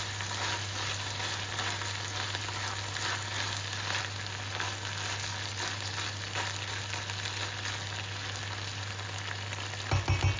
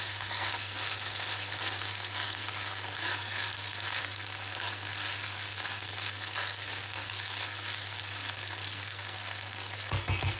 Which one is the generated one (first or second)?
second